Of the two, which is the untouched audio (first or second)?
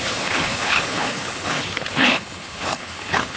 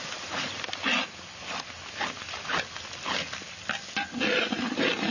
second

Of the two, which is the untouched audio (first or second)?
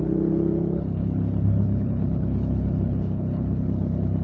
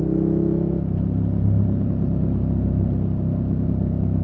second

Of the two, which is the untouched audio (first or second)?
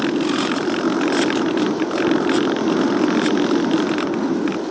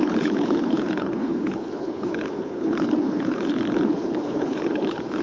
first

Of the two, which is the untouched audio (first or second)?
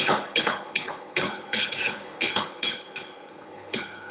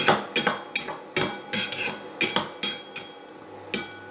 second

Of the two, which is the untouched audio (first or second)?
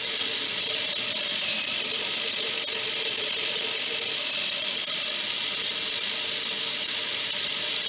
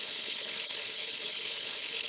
first